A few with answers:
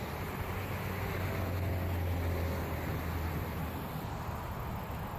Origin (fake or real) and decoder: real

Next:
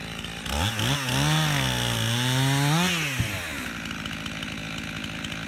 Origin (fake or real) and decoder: real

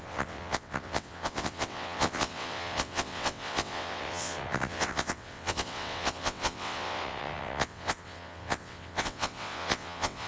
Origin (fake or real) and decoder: fake, vocoder, WaveNeXt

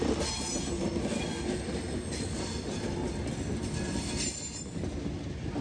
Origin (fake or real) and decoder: real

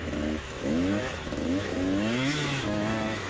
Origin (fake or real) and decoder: fake, autoencoder, DAC-VAE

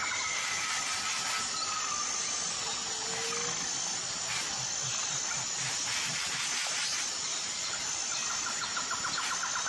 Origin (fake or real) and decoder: real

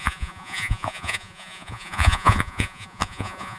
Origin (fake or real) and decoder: fake, vocoder, Vocos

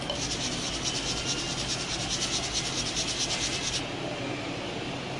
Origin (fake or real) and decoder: real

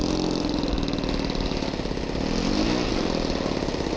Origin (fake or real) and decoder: real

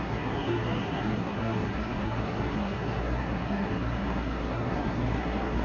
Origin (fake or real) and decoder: fake, codec, SNAC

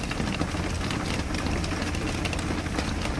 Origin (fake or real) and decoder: real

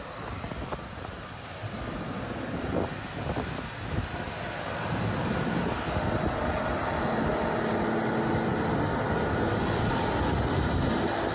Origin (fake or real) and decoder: real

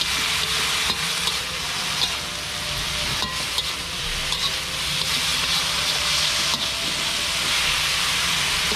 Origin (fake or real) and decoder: real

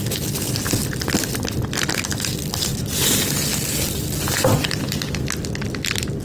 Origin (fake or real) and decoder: real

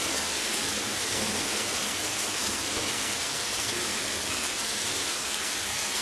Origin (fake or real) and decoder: fake, codec, SNAC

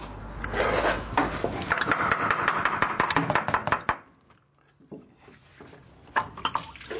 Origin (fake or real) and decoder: real